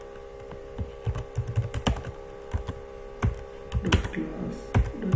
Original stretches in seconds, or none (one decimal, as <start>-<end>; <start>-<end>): 0.0-5.2